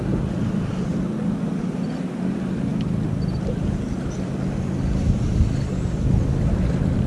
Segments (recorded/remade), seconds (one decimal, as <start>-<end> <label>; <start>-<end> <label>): 0.0-7.1 recorded